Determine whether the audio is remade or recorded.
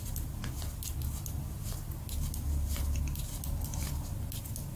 recorded